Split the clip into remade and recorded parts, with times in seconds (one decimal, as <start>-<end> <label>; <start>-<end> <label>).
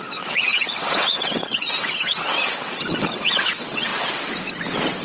0.0-3.9 remade; 3.9-5.0 recorded